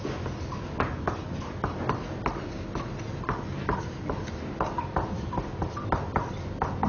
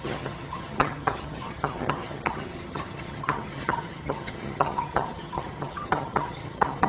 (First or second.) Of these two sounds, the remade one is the second